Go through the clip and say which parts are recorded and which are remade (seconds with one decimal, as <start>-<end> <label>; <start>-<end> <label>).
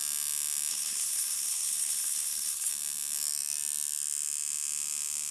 0.0-0.7 recorded; 0.7-2.7 remade; 2.7-5.3 recorded